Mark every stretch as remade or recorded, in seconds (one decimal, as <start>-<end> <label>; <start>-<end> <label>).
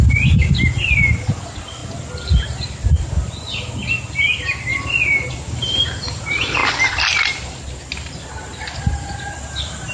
0.0-9.9 recorded